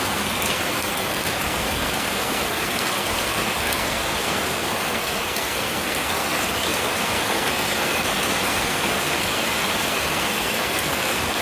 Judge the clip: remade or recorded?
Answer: remade